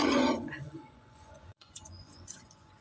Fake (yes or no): yes